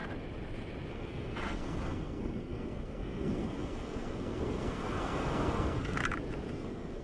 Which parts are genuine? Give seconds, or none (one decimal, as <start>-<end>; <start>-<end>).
0.0-0.9; 6.0-6.5